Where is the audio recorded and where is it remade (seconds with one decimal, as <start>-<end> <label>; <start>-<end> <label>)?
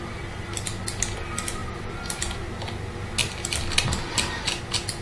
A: 0.0-5.0 recorded